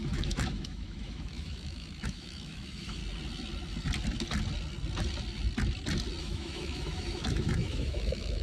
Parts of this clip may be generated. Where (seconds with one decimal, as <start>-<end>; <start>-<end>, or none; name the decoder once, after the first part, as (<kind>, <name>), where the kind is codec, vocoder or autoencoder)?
0.0-3.0 (autoencoder, DAC-VAE); 6.2-8.4